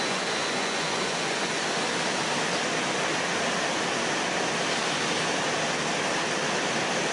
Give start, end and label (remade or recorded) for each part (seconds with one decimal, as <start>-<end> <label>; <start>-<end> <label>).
0.0-1.6 remade; 1.6-7.1 recorded